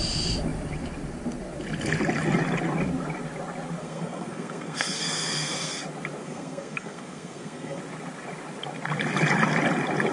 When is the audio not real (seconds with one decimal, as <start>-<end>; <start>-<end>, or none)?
3.8-5.8; 6.2-7.8